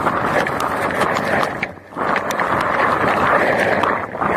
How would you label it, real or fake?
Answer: fake